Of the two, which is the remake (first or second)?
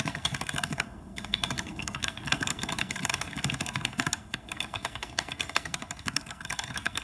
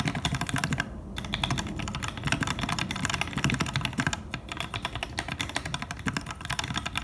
first